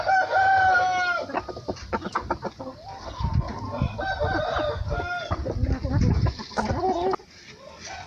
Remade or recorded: recorded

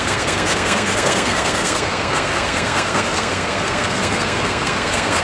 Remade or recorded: remade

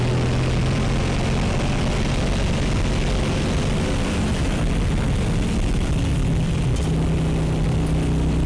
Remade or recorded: recorded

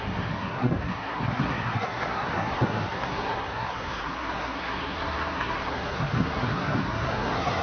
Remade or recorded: remade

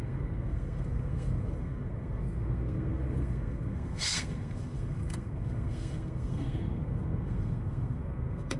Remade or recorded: remade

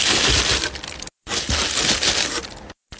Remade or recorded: recorded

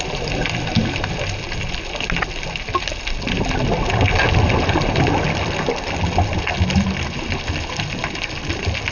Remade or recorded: recorded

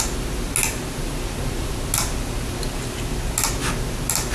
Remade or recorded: recorded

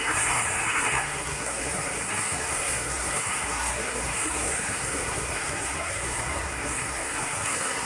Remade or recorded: remade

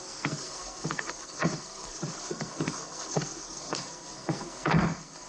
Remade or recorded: remade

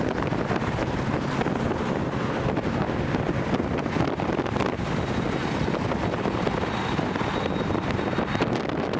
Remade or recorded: recorded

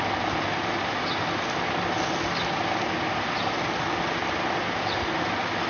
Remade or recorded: recorded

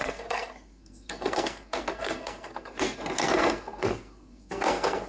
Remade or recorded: remade